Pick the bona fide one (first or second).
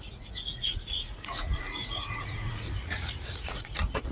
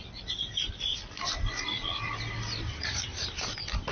second